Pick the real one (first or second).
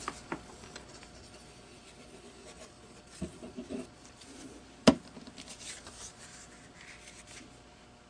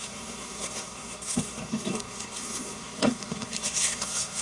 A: first